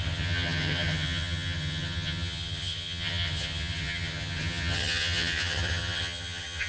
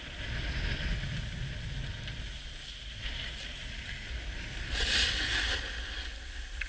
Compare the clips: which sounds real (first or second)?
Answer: second